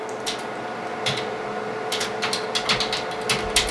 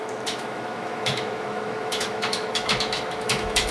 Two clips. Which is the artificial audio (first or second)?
second